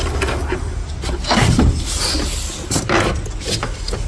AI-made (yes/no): no